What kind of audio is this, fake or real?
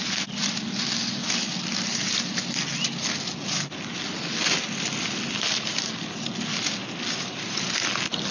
real